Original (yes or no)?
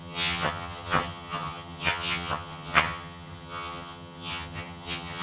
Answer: no